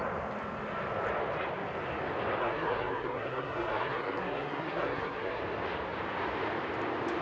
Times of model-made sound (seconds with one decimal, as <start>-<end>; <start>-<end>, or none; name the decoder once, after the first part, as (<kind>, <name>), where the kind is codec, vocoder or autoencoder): 2.4-5.4 (codec, SNAC)